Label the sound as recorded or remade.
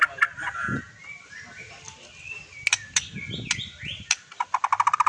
recorded